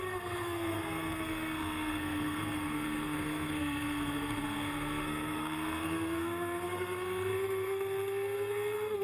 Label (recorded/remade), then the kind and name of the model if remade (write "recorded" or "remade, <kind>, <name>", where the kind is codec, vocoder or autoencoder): remade, codec, SNAC